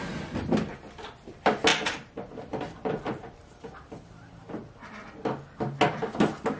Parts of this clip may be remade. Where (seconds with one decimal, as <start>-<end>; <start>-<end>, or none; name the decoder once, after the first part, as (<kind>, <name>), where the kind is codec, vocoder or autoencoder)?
1.7-2.9 (vocoder, BigVGAN v2); 3.4-4.6